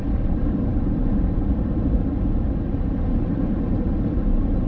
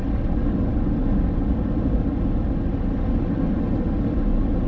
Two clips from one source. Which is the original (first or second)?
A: second